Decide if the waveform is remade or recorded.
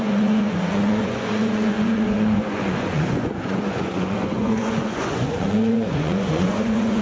remade